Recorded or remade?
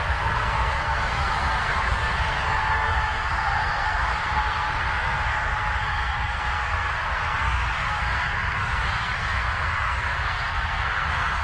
remade